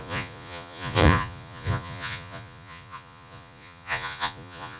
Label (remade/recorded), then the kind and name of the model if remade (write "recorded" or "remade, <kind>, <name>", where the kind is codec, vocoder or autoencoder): remade, vocoder, Vocos